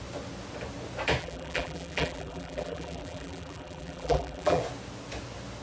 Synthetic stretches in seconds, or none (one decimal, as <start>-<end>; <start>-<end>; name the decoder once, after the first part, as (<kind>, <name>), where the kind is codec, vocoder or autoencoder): 1.2-4.6 (vocoder, BigVGAN v2)